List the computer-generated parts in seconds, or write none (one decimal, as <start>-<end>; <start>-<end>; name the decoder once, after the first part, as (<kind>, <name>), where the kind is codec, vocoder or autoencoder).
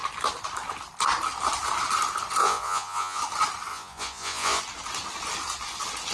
2.4-3.2 (vocoder, Vocos); 3.7-4.6